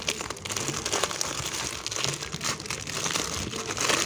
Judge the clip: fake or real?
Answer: real